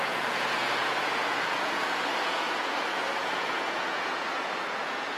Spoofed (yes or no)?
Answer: yes